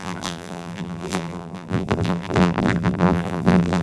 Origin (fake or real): fake